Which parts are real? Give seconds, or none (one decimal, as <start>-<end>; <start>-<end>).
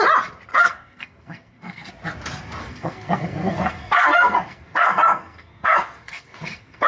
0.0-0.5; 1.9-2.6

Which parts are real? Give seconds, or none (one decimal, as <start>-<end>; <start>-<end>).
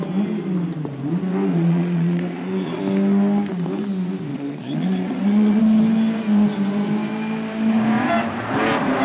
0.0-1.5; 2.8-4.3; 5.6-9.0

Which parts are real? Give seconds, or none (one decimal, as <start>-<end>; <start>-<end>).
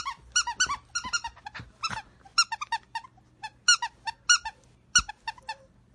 0.0-5.9